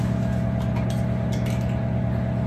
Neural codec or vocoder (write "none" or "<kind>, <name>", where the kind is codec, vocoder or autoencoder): none